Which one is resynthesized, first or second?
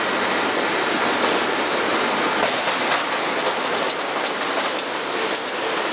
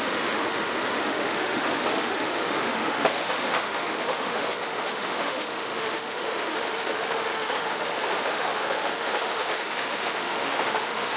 second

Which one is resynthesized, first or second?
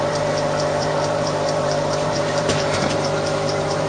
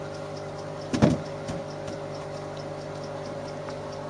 first